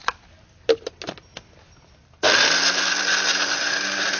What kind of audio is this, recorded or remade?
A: recorded